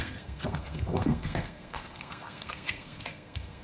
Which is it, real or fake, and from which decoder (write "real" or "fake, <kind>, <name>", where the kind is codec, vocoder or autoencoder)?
fake, codec, SNAC